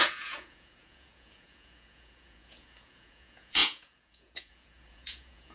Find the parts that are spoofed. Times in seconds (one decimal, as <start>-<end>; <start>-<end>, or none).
0.0-5.5